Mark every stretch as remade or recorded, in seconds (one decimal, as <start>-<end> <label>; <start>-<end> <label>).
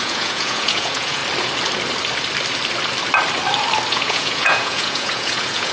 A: 0.0-1.2 remade; 1.2-3.9 recorded; 3.9-5.7 remade